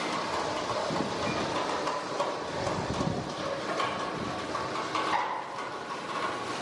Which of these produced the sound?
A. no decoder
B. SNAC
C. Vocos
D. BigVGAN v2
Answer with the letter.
A